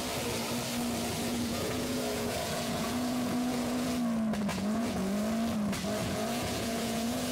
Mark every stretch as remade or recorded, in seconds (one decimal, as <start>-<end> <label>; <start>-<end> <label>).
0.0-1.3 recorded; 1.3-3.9 remade; 3.9-4.5 recorded; 4.5-5.2 remade; 5.2-6.0 recorded; 6.0-7.3 remade